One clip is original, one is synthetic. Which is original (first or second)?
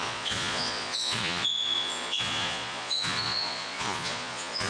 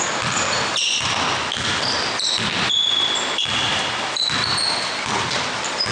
second